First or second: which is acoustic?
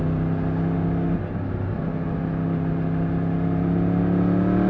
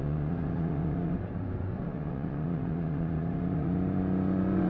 first